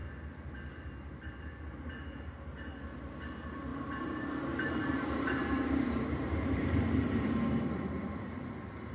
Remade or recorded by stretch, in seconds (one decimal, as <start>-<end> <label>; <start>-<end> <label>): 0.0-3.7 recorded; 3.7-7.4 remade; 7.4-8.9 recorded